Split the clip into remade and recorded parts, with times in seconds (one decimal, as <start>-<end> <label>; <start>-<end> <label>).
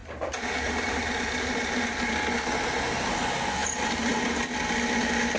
0.0-2.2 remade; 2.2-3.6 recorded; 3.6-4.1 remade; 4.1-5.4 recorded